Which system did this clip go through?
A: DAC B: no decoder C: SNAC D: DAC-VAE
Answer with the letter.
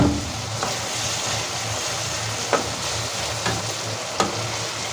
B